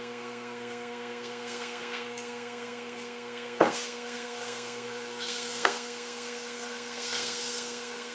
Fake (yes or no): yes